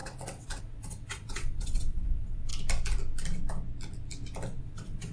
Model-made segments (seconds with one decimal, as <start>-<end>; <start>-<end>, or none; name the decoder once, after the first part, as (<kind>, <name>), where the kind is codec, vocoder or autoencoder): 0.0-2.5 (vocoder, WaveNeXt); 4.6-5.1